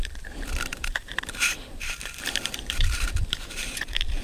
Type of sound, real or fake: fake